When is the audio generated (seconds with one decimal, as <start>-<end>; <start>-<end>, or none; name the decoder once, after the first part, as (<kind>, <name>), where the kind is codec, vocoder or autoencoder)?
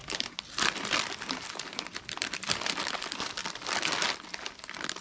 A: 0.0-3.0 (vocoder, BigVGAN v2)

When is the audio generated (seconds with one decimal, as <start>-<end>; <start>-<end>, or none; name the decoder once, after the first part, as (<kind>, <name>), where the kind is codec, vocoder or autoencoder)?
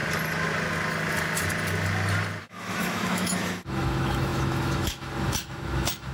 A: 2.4-6.1 (autoencoder, DAC-VAE)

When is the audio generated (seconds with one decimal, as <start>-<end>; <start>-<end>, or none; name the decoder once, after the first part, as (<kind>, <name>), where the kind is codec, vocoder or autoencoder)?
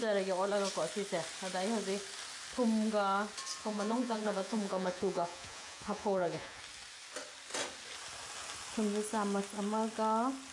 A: 3.6-6.6 (vocoder, Vocos)